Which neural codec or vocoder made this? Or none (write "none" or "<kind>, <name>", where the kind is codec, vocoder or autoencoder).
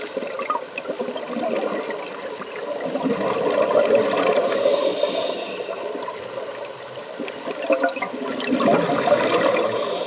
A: none